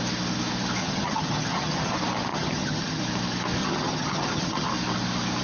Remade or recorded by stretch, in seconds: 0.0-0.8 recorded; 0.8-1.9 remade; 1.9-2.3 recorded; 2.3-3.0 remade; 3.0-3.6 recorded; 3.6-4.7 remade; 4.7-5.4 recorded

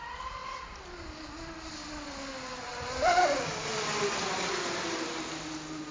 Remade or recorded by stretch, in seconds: 0.0-2.7 recorded; 2.7-4.8 remade; 4.8-5.9 recorded